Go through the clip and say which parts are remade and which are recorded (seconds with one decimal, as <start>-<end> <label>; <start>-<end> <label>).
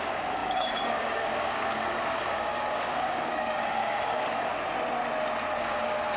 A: 0.0-4.5 remade; 4.5-5.6 recorded; 5.6-6.2 remade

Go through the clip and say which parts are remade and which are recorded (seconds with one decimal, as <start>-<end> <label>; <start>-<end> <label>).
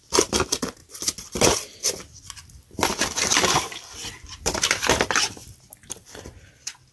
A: 0.0-0.8 recorded; 0.8-4.9 remade; 4.9-6.9 recorded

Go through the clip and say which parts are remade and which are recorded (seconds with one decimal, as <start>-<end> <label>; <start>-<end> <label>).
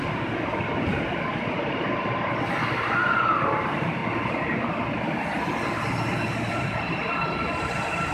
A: 0.0-4.0 remade; 4.0-6.5 recorded; 6.5-8.1 remade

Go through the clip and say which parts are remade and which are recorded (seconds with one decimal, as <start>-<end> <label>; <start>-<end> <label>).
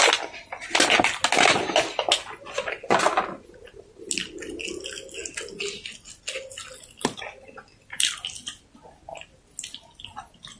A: 0.0-10.6 recorded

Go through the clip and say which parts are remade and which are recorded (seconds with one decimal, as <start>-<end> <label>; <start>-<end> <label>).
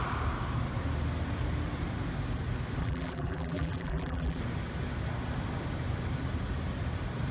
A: 0.0-2.8 recorded; 2.8-4.4 remade; 4.4-7.3 recorded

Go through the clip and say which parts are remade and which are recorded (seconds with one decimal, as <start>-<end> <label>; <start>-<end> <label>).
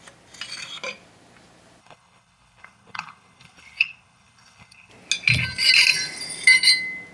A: 0.0-1.8 recorded; 1.8-4.9 remade; 4.9-7.1 recorded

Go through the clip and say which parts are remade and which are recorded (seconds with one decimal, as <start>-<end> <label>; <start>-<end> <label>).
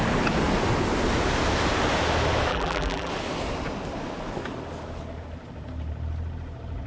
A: 0.0-2.5 recorded; 2.5-3.1 remade; 3.1-6.9 recorded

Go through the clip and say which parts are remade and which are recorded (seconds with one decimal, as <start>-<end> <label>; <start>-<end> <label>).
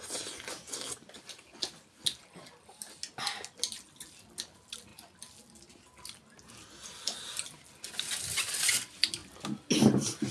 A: 0.0-10.3 recorded